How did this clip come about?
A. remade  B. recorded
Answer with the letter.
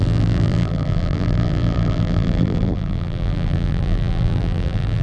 A